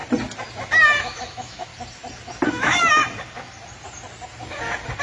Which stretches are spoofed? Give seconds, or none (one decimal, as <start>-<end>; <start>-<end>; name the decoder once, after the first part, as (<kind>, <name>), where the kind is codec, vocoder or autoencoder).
1.0-1.7 (autoencoder, DAC-VAE); 2.5-3.0